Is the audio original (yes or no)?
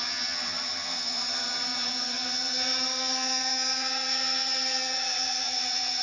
no